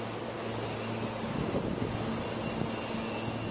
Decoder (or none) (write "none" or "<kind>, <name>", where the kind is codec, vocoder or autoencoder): none